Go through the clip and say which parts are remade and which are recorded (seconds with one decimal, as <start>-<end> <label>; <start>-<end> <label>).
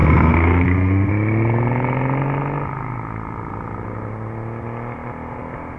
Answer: 0.0-1.1 remade; 1.1-5.8 recorded